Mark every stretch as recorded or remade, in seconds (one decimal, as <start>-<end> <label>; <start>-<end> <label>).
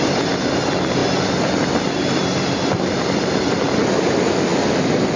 0.0-5.2 recorded